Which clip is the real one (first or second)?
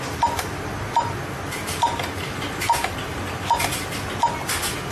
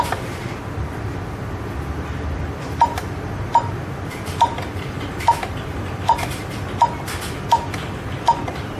first